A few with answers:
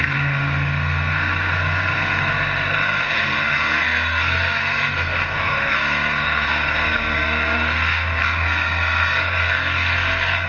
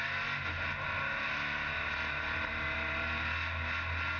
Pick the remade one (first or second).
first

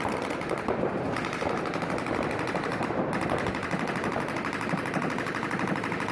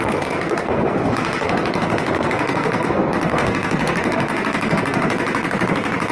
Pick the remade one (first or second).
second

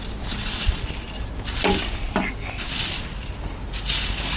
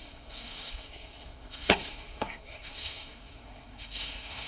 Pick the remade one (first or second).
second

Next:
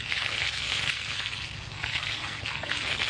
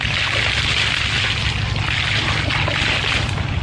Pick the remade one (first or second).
first